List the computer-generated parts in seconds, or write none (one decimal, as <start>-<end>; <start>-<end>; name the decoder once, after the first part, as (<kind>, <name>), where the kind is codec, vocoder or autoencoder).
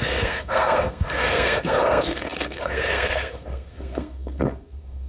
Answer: 0.0-5.1 (codec, SNAC)